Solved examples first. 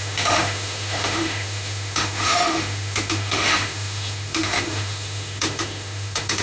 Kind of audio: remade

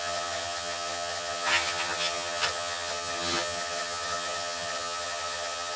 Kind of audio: remade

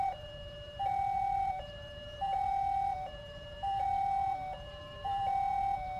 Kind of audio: remade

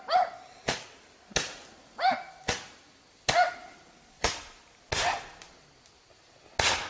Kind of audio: recorded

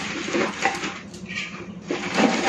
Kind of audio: remade